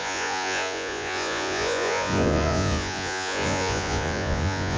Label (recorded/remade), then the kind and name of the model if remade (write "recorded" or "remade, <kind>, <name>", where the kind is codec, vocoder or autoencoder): remade, vocoder, Vocos